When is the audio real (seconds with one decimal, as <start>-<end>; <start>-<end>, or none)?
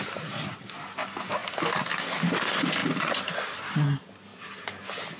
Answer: 0.0-2.8; 3.6-4.3; 4.8-5.2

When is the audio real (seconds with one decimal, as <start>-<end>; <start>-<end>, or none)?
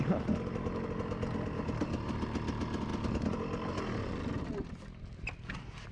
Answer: 0.0-5.9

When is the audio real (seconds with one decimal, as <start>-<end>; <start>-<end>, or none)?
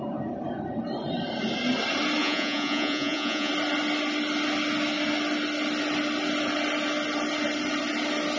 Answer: 0.0-2.2; 3.5-8.4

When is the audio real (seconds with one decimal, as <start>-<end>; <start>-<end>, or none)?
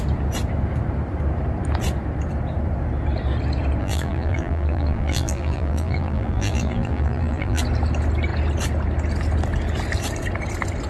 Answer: 0.0-3.8; 7.6-10.9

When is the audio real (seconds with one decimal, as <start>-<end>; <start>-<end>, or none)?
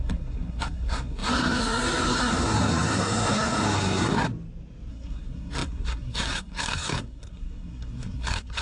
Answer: 4.3-4.9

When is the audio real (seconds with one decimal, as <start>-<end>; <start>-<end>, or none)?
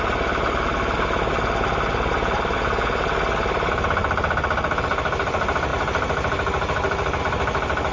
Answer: 0.0-7.9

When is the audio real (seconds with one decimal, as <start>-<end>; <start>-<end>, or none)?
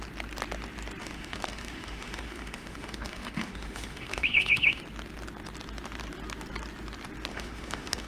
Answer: 0.0-1.0; 4.8-7.3